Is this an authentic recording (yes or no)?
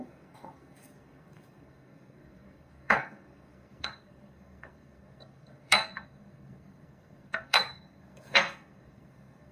no